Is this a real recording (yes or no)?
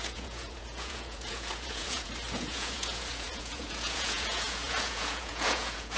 no